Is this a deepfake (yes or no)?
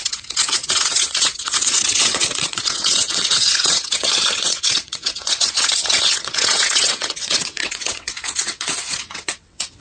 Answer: yes